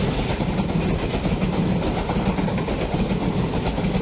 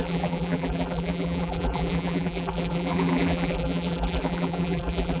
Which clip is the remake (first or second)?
second